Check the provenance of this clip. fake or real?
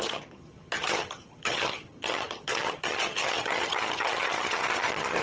fake